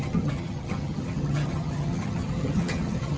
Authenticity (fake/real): fake